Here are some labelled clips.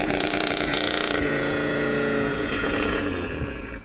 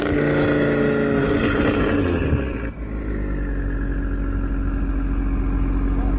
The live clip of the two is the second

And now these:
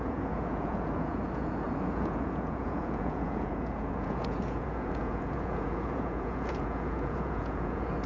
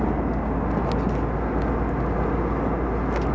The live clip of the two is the second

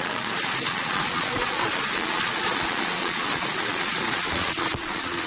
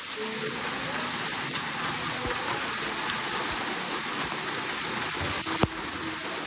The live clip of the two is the second